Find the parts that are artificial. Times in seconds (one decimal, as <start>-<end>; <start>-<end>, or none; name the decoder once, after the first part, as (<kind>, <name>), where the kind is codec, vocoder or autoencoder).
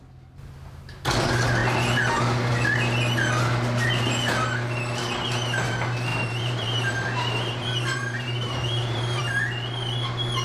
6.1-9.2 (vocoder, BigVGAN v2)